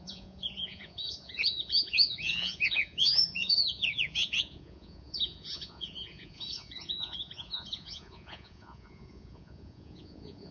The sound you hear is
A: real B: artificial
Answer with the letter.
B